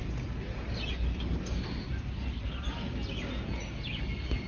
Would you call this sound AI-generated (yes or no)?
no